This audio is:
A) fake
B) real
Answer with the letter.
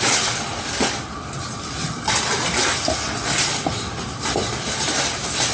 B